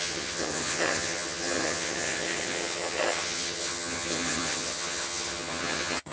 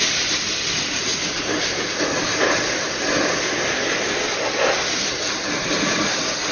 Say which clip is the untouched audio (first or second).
second